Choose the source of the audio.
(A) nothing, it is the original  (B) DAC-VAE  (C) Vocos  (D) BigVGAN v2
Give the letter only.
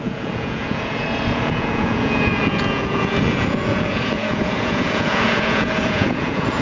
C